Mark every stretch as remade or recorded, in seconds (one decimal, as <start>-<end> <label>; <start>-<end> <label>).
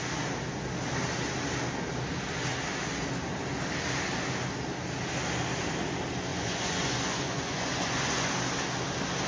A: 0.0-6.3 recorded; 6.3-8.3 remade; 8.3-9.3 recorded